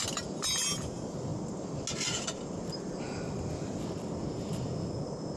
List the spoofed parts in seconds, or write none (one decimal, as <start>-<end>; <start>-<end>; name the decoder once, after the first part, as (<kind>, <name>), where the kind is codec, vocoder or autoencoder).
none